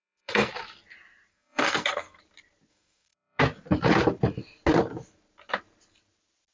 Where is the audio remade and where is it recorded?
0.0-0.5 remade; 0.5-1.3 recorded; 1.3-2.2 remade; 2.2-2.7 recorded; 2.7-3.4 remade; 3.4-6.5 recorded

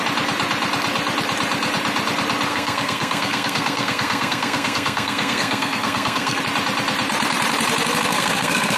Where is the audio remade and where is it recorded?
0.0-2.5 recorded; 2.5-6.4 remade; 6.4-8.1 recorded; 8.1-8.8 remade

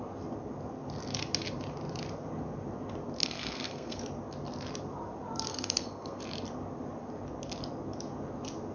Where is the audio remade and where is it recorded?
0.0-3.2 recorded; 3.2-4.0 remade; 4.0-5.5 recorded; 5.5-6.2 remade; 6.2-8.7 recorded

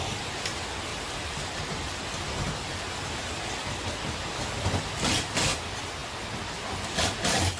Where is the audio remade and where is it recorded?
0.0-7.6 recorded